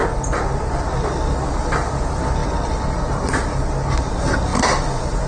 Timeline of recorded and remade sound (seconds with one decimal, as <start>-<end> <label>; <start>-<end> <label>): 0.0-5.3 recorded